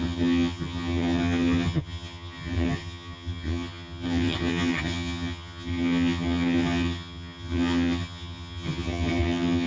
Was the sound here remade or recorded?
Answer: remade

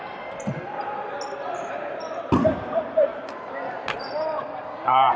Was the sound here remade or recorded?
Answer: recorded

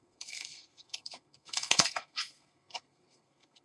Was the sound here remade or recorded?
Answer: remade